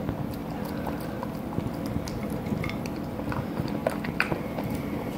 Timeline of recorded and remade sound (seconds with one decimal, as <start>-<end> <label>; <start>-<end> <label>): 0.0-5.2 recorded